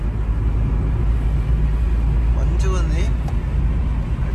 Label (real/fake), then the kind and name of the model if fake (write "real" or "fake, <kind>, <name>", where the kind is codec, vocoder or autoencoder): real